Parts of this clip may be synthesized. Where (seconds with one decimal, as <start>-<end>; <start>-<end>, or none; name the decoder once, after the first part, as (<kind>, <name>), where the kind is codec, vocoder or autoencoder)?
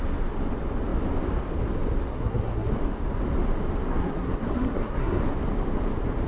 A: 2.1-2.7 (codec, SNAC); 3.9-5.2